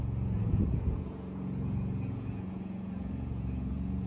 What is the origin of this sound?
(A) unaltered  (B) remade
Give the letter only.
B